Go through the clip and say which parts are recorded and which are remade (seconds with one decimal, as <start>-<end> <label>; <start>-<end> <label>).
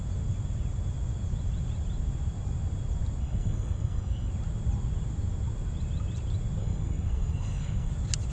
0.0-3.2 recorded; 3.2-4.3 remade; 4.3-6.6 recorded; 6.6-7.9 remade; 7.9-8.3 recorded